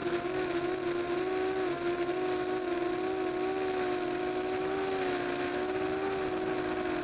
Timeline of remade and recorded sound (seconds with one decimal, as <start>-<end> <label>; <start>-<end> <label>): 0.0-7.0 recorded

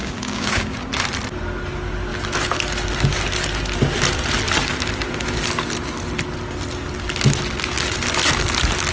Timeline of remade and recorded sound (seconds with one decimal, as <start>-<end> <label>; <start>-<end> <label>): 0.0-0.9 remade; 0.9-8.9 recorded

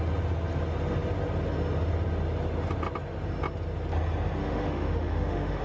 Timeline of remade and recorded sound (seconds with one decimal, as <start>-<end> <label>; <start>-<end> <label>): 0.0-4.4 recorded; 4.4-5.6 remade